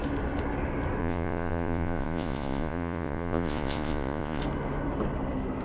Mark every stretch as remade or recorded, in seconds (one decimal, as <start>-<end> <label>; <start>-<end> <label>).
0.0-1.0 recorded; 1.0-4.4 remade; 4.4-5.6 recorded